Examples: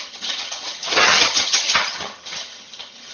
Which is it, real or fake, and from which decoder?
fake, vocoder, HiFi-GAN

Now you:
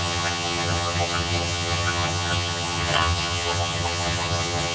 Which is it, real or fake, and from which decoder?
fake, vocoder, HiFi-GAN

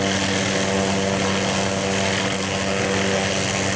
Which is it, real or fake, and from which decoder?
real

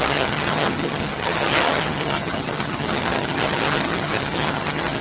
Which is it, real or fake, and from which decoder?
fake, vocoder, HiFi-GAN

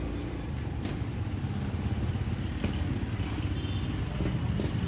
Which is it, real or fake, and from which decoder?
real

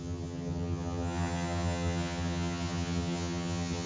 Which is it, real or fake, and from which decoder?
fake, vocoder, HiFi-GAN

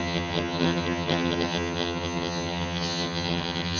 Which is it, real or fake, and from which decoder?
fake, vocoder, HiFi-GAN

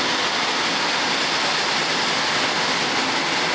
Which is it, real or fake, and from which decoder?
real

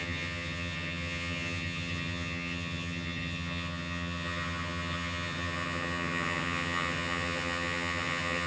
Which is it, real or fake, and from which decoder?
fake, vocoder, HiFi-GAN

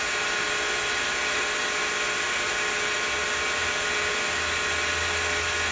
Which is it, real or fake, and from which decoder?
real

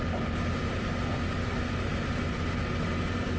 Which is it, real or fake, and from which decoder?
real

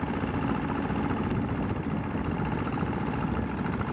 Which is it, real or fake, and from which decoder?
real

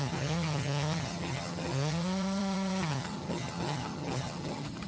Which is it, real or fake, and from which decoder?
fake, vocoder, HiFi-GAN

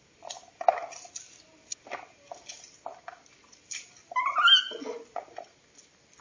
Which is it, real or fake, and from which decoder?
real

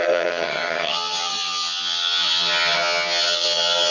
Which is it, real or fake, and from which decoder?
fake, vocoder, HiFi-GAN